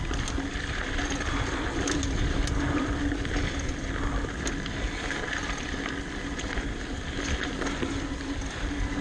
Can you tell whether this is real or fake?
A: real